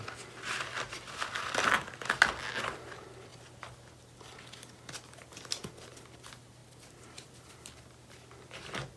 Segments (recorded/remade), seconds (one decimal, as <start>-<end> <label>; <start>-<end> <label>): 0.0-6.6 recorded; 6.6-7.5 remade; 7.5-9.0 recorded